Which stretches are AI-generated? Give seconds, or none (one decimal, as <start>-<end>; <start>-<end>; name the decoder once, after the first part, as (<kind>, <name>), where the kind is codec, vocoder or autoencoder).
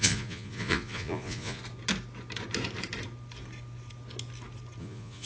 0.0-1.6 (vocoder, Vocos); 4.8-5.3